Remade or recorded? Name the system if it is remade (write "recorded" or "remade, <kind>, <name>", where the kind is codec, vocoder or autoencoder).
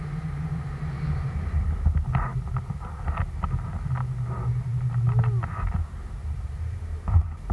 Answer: recorded